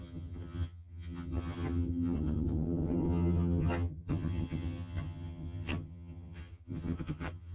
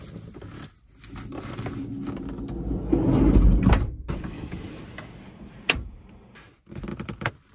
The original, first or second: second